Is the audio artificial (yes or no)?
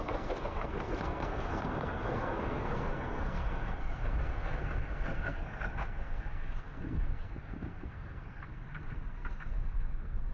yes